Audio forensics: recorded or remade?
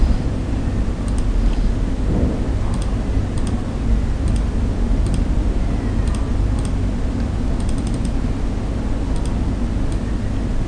recorded